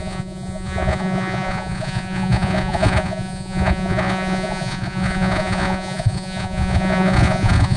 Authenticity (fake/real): fake